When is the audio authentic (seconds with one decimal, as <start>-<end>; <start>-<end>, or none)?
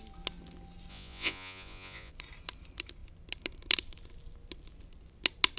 0.0-0.9; 2.1-5.6